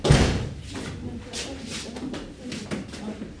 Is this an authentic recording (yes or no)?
yes